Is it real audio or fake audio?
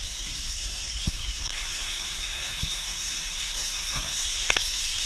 fake